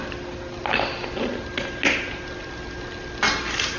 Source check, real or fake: real